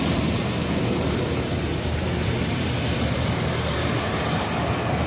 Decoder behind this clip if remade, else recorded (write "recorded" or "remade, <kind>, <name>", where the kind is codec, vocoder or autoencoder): remade, vocoder, BigVGAN v2